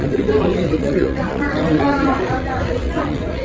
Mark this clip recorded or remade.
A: remade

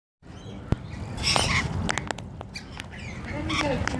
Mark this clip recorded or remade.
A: recorded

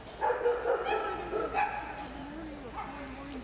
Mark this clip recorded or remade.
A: recorded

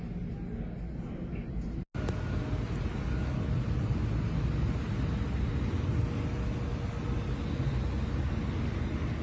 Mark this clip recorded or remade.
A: recorded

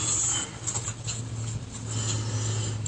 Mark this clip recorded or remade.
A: recorded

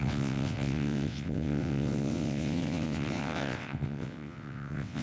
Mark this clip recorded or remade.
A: remade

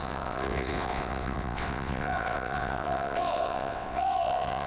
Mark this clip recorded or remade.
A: remade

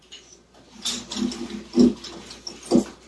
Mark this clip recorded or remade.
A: recorded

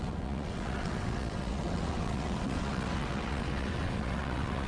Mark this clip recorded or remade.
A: remade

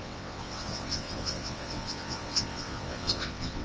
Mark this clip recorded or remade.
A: remade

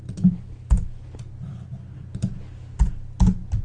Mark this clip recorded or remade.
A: recorded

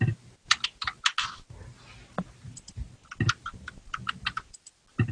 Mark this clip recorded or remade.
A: recorded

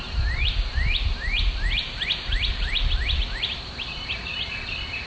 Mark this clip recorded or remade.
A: recorded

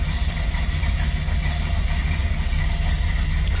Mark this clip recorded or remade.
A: recorded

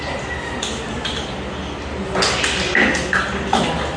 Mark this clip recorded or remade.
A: recorded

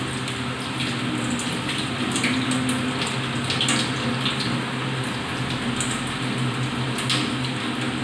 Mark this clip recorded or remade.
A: recorded